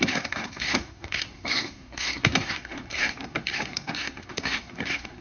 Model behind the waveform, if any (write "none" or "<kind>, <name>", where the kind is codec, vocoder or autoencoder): codec, SNAC